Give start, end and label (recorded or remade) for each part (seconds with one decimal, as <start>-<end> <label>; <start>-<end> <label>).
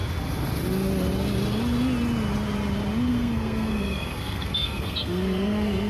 0.0-3.1 recorded; 3.1-5.9 remade